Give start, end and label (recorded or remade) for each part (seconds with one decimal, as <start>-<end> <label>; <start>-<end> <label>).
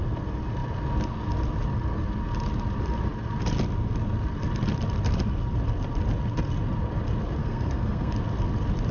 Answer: 0.0-7.4 recorded; 7.4-8.1 remade; 8.1-8.9 recorded